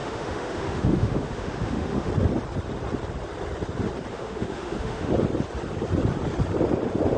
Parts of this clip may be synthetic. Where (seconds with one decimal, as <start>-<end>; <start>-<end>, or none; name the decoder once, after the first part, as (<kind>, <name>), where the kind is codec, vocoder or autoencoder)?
0.0-2.1 (autoencoder, DAC-VAE); 4.1-5.1